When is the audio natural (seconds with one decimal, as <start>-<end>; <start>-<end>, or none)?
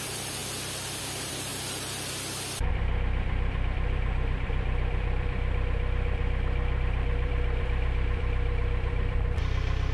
0.4-1.0; 1.5-2.7